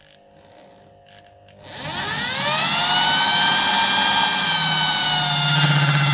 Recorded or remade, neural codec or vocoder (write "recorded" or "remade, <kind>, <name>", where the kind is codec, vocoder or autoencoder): recorded